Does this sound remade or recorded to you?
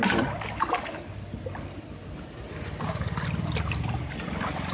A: recorded